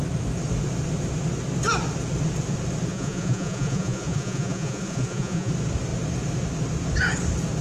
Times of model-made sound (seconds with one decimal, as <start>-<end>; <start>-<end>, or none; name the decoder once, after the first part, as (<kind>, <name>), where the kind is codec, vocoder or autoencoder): 2.9-5.5 (vocoder, Vocos)